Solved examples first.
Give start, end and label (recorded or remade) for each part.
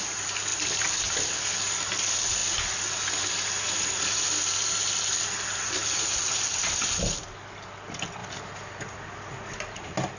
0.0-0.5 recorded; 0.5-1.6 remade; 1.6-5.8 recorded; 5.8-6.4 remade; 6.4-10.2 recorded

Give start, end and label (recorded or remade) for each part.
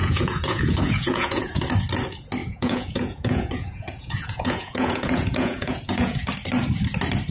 0.0-1.6 remade; 1.6-2.4 recorded; 2.4-6.3 remade; 6.3-7.3 recorded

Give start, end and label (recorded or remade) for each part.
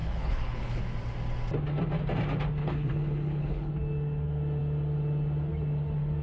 0.0-0.8 remade; 0.8-2.6 recorded; 2.6-3.7 remade; 3.7-6.2 recorded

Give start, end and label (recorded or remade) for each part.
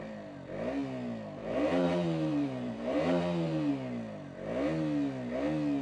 0.0-1.4 recorded; 1.4-3.7 remade; 3.7-5.8 recorded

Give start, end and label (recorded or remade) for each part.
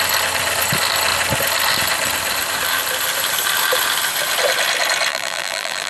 0.0-5.1 recorded; 5.1-5.9 remade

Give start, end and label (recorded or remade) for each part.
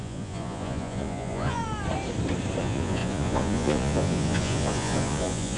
0.0-1.6 remade; 1.6-2.6 recorded; 2.6-5.6 remade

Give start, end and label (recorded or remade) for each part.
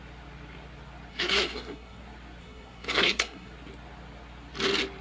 0.0-1.1 recorded; 1.1-2.0 remade; 2.0-2.4 recorded; 2.4-3.5 remade; 3.5-5.0 recorded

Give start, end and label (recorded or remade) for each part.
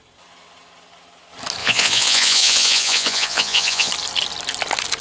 0.0-1.6 recorded; 1.6-3.9 remade; 3.9-5.0 recorded